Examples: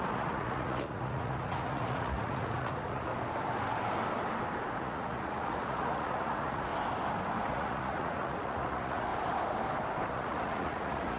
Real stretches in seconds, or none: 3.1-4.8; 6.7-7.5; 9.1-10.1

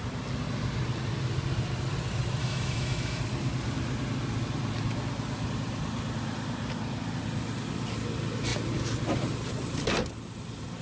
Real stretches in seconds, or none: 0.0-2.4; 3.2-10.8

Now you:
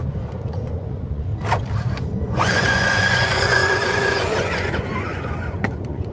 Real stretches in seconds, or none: 1.3-1.8

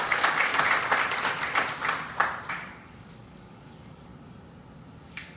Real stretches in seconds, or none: 0.5-2.5; 4.1-5.0